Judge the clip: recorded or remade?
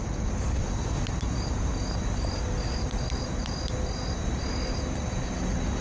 recorded